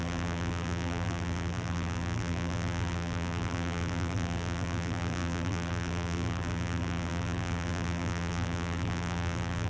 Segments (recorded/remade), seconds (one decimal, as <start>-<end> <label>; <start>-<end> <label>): 0.0-9.7 remade